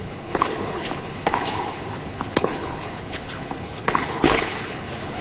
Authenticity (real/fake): fake